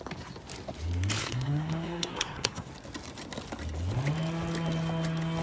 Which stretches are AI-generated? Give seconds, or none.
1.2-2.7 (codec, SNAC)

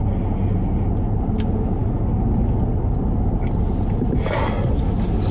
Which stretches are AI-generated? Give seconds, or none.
none